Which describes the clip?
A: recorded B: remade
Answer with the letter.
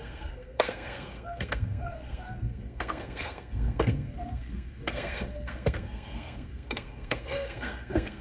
B